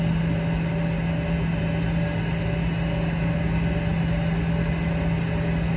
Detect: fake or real real